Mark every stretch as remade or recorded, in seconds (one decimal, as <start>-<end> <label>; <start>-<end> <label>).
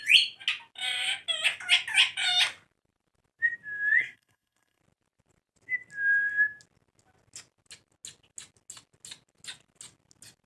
0.0-4.0 recorded; 4.0-4.8 remade; 4.8-10.5 recorded